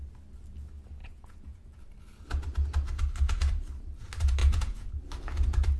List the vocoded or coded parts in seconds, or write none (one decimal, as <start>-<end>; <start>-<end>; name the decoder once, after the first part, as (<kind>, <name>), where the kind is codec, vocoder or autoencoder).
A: 1.0-1.8 (vocoder, Vocos); 4.4-4.9